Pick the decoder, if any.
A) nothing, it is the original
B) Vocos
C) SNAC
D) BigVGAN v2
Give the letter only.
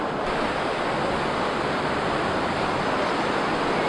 A